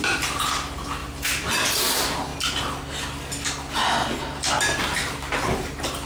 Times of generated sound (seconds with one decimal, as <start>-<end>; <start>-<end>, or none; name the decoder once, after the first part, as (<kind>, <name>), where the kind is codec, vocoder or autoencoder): 0.0-2.3 (vocoder, BigVGAN v2)